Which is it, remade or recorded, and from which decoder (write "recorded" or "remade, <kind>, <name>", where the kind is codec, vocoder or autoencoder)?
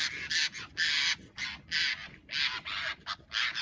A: recorded